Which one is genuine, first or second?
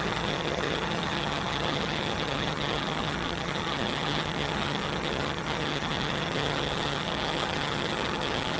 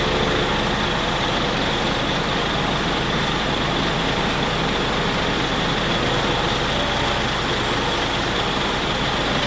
second